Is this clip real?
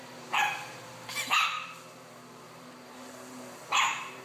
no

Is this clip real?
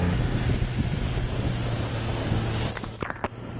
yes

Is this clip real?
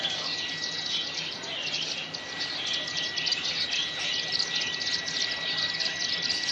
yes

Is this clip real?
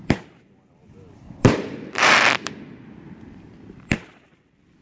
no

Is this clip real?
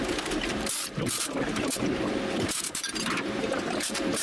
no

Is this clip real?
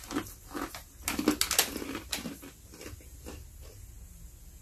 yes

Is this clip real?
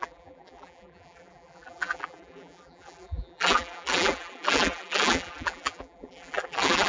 no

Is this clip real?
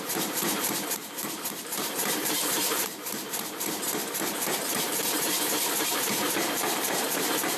no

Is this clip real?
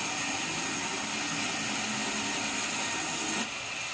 yes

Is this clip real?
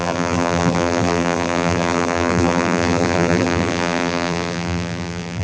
no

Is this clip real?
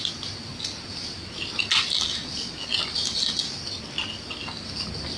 yes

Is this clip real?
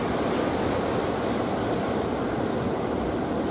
yes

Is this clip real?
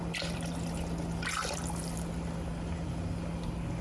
yes